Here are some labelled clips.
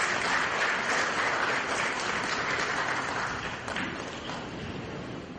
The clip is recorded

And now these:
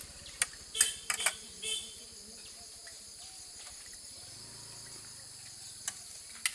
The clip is recorded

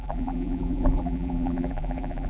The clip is remade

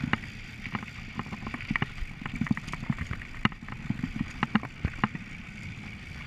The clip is remade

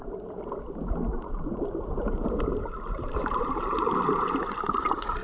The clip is remade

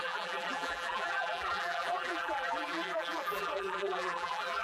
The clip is remade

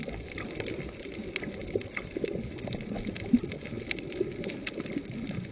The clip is recorded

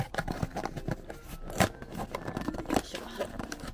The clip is recorded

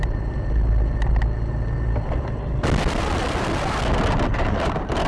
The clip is recorded